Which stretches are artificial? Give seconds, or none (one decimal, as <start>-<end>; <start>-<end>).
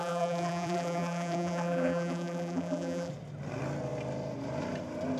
0.0-3.1